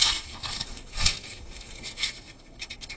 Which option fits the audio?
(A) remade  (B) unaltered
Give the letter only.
A